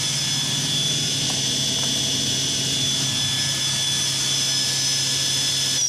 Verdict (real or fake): real